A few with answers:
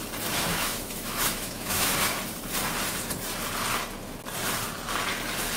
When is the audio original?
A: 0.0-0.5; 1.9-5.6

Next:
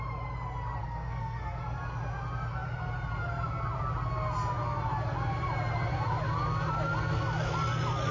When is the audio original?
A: 0.0-0.8; 1.6-8.1